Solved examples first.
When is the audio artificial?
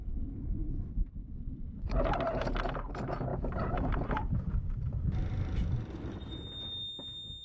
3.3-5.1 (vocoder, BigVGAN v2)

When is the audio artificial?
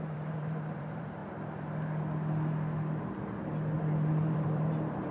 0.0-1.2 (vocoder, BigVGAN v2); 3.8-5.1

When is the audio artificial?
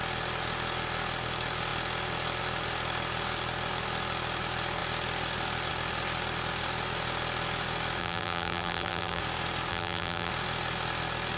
8.0-9.2 (vocoder, BigVGAN v2); 9.7-10.3